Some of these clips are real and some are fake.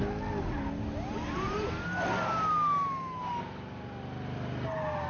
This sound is real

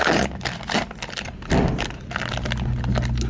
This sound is real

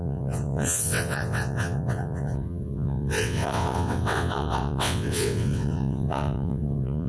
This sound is fake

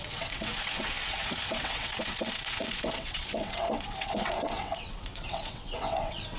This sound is fake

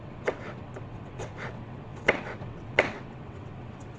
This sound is fake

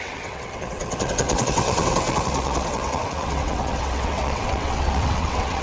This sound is fake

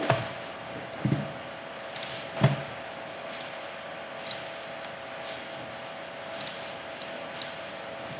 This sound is real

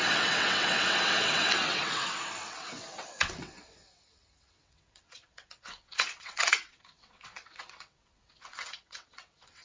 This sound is fake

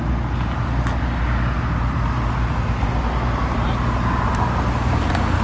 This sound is real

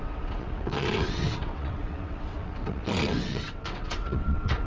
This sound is fake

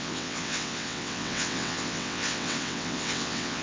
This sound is fake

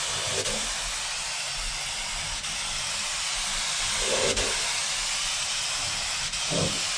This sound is real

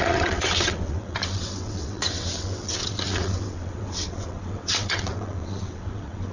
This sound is fake